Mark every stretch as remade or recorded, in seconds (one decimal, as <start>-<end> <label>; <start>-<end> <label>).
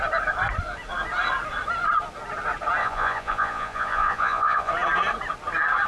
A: 0.0-2.8 recorded; 2.8-4.7 remade; 4.7-5.9 recorded